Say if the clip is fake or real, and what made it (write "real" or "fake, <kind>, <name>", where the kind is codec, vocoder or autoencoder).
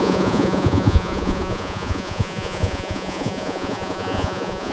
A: fake, vocoder, Vocos